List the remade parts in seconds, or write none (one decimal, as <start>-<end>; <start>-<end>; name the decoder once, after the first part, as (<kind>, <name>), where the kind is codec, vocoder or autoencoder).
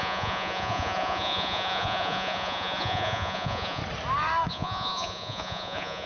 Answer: 0.0-3.8 (vocoder, Vocos); 4.5-6.1